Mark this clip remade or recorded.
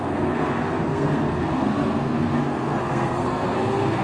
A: remade